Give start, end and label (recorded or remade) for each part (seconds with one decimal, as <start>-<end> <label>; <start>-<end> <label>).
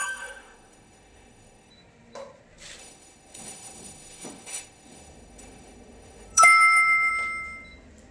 0.0-1.7 remade; 1.7-2.8 recorded; 2.8-7.1 remade; 7.1-8.1 recorded